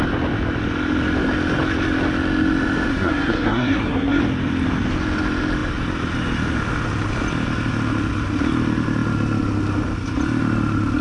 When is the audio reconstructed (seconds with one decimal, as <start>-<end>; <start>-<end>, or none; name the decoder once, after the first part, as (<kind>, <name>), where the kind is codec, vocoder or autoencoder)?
2.9-4.2 (codec, SNAC)